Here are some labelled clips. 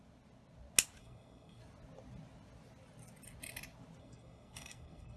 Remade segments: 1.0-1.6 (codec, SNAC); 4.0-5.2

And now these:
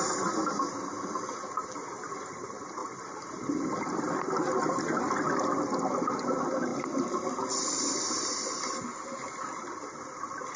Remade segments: none

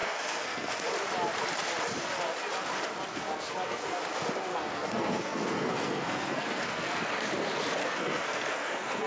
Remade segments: 0.0-0.8 (codec, SNAC); 3.1-4.0; 4.5-7.0; 7.8-9.1

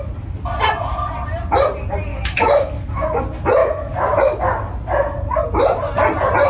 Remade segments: 2.1-3.2 (autoencoder, DAC-VAE); 3.6-4.4